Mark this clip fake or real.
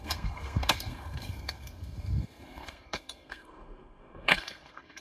fake